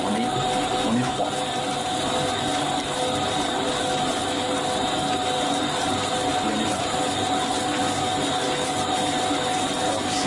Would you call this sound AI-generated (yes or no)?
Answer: no